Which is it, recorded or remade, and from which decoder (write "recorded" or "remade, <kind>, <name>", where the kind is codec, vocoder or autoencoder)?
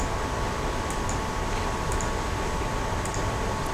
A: recorded